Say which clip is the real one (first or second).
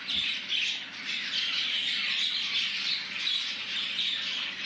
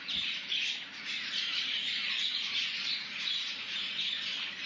first